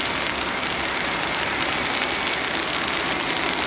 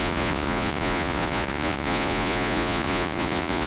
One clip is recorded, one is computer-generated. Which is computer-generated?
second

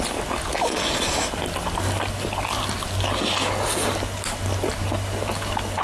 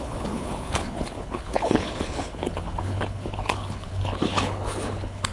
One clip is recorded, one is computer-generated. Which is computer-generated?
second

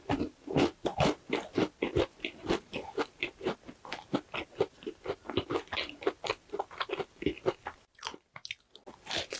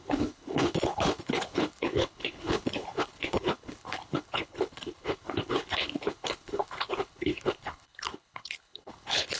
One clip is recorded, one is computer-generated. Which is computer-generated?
second